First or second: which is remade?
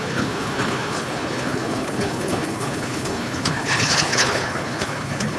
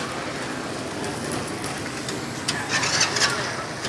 first